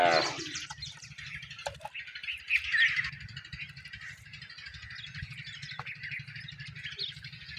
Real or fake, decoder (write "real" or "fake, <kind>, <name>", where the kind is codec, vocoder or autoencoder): real